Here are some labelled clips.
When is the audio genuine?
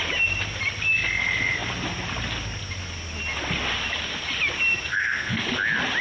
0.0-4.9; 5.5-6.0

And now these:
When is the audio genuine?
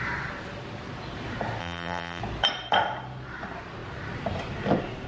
0.0-1.6; 2.2-5.1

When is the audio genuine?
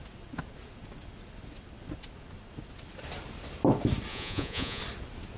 0.0-4.1; 4.8-5.4